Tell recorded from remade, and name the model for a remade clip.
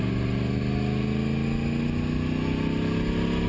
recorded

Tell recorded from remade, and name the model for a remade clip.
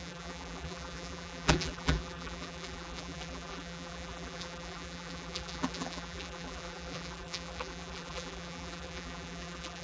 remade, vocoder, BigVGAN v2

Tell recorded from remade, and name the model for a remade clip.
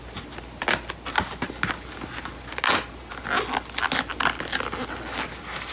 recorded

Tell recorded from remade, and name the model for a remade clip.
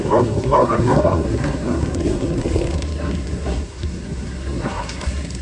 remade, codec, SNAC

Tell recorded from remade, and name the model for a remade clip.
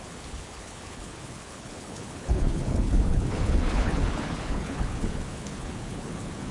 remade, codec, HILCodec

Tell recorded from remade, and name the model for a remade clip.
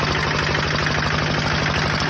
recorded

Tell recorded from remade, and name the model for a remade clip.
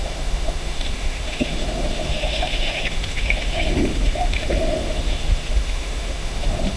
remade, autoencoder, DAC-VAE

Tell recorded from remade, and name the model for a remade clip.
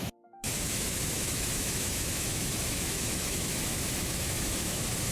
remade, autoencoder, DAC-VAE